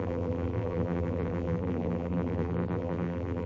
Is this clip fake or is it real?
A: fake